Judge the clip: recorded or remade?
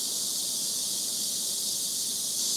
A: remade